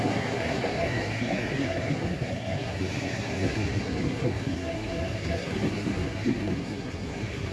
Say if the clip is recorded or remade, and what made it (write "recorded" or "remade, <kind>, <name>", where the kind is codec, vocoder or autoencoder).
remade, codec, SNAC